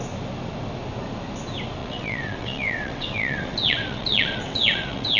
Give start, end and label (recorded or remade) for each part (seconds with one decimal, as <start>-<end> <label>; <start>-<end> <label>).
0.0-1.8 recorded; 1.8-5.2 remade